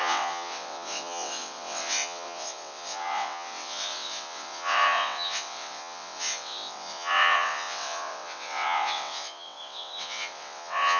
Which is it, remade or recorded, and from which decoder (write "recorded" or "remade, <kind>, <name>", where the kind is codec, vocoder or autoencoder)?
remade, vocoder, WaveNeXt